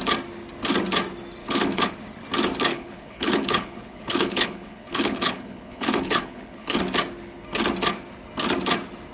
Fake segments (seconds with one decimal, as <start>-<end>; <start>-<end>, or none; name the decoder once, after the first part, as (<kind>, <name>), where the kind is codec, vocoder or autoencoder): 1.4-1.9 (codec, HILCodec); 2.7-6.8